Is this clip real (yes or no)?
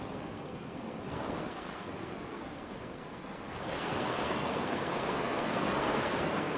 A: no